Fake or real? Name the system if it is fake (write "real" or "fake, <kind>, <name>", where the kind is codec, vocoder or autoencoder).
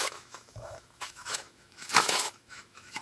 fake, autoencoder, DAC-VAE